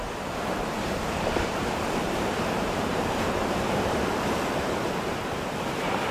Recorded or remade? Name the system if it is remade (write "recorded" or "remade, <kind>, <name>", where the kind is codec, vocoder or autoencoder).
remade, vocoder, BigVGAN v2